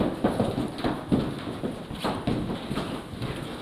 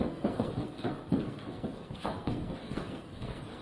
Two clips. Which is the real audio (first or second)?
first